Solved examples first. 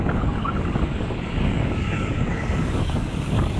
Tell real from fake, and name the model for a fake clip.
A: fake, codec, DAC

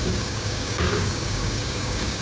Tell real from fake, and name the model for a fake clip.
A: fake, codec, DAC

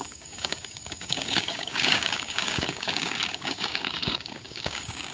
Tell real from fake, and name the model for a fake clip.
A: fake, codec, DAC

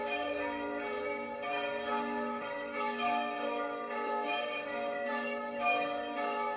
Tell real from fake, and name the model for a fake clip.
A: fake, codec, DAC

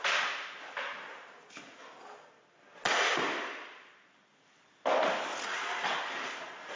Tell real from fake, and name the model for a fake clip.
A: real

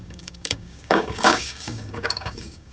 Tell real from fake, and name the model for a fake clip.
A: fake, codec, DAC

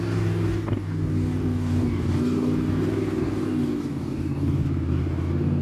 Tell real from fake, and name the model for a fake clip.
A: fake, codec, DAC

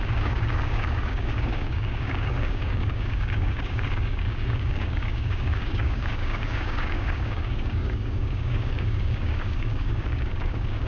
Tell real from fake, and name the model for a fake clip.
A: fake, codec, DAC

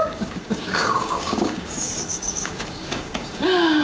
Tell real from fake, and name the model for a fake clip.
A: fake, codec, DAC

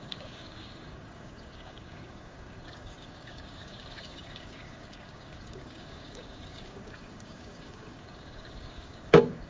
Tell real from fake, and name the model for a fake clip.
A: fake, codec, DAC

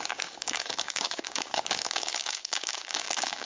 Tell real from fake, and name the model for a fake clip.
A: fake, codec, DAC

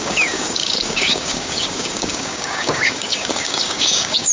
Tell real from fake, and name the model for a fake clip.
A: fake, codec, DAC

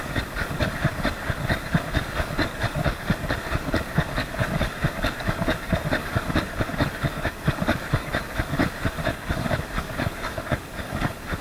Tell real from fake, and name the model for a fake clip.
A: fake, codec, DAC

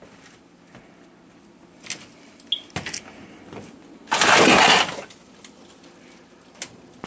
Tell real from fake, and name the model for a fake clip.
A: real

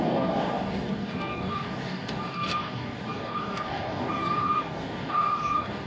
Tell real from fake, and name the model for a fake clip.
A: fake, codec, DAC